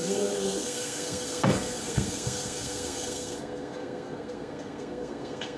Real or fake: fake